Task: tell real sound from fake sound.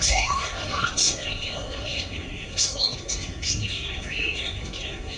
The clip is fake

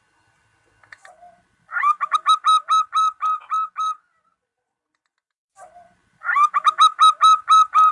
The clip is real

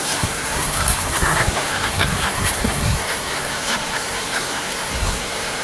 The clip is fake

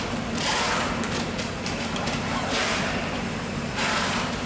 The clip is real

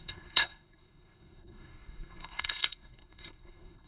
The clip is fake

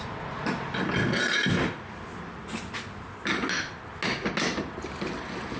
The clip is real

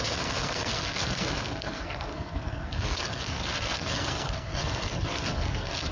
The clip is fake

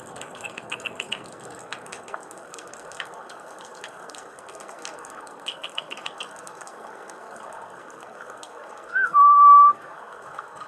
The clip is fake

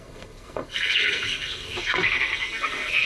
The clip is fake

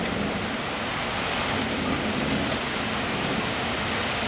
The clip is real